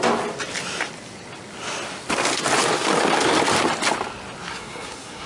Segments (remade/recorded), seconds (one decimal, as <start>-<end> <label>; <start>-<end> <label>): 0.0-4.5 recorded; 4.5-5.3 remade